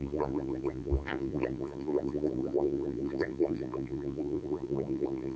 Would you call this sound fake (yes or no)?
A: yes